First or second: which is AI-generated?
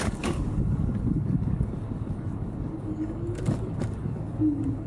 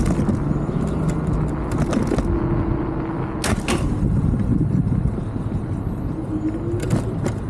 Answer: first